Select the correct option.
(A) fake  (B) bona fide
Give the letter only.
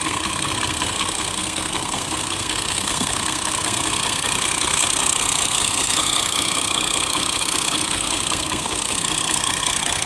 A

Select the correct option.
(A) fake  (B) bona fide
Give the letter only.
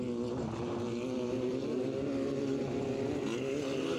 B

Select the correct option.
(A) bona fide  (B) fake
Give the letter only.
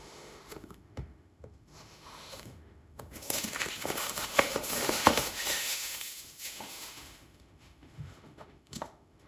B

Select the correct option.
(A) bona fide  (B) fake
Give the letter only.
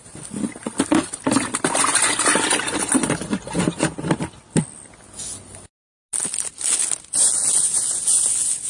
A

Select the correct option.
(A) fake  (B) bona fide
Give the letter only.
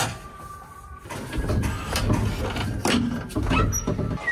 B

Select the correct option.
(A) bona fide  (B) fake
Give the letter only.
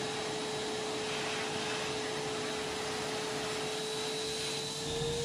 A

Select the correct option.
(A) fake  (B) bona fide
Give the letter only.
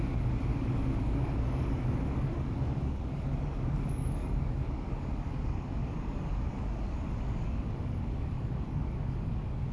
A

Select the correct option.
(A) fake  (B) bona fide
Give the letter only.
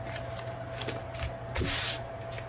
B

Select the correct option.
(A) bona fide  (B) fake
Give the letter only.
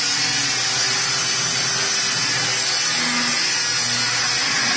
A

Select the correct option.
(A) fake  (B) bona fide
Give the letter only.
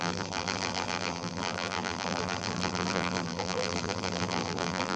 A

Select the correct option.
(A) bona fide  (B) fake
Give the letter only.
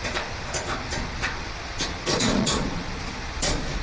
B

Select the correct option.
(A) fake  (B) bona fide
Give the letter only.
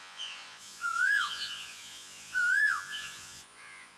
A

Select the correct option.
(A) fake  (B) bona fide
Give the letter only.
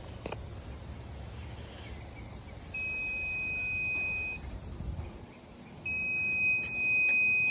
B